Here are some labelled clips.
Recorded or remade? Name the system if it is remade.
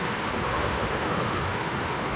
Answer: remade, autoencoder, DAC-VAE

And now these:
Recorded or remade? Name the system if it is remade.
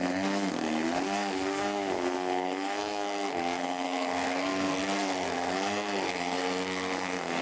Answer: remade, codec, SNAC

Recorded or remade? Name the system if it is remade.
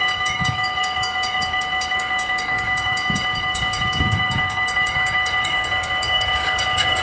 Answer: remade, codec, DAC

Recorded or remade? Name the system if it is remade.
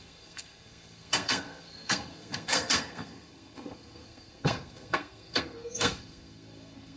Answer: remade, codec, SNAC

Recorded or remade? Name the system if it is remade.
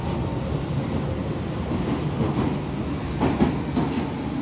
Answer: recorded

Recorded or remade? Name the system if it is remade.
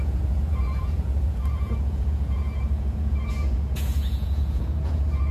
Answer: remade, vocoder, Vocos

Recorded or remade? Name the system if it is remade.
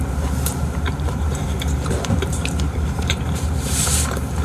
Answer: remade, vocoder, BigVGAN v2